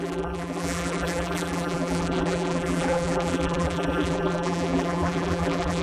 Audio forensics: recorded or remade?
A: remade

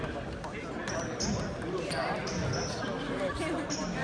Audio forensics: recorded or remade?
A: recorded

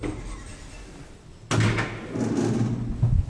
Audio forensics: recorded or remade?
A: recorded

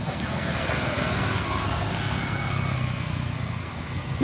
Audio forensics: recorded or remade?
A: remade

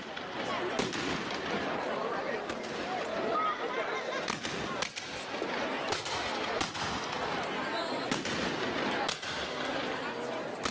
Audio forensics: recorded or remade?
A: recorded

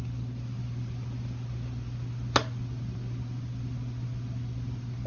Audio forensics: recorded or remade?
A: recorded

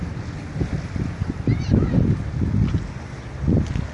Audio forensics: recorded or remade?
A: recorded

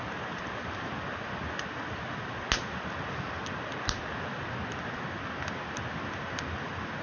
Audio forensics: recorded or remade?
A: recorded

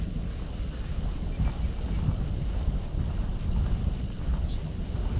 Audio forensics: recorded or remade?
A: recorded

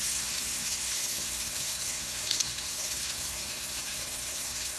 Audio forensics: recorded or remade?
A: remade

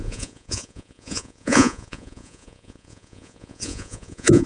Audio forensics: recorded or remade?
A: remade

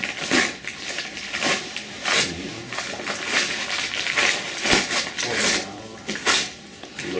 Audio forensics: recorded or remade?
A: recorded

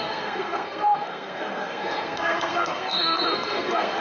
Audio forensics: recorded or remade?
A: remade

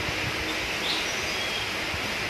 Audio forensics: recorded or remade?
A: recorded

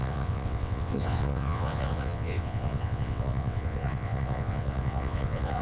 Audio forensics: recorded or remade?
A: remade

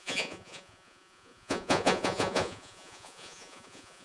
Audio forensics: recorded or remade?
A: remade